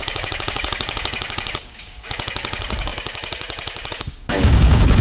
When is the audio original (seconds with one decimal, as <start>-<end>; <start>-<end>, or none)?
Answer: none